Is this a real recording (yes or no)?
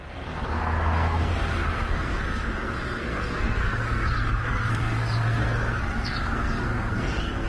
no